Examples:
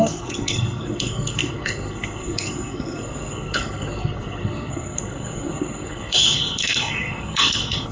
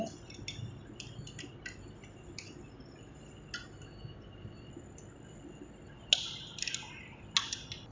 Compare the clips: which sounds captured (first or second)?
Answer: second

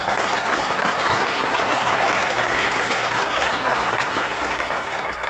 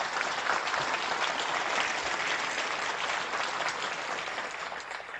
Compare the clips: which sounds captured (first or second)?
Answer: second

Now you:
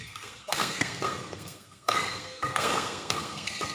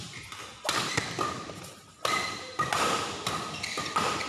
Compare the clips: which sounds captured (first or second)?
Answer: second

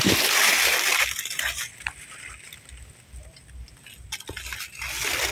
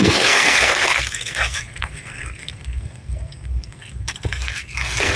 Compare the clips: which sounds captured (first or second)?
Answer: first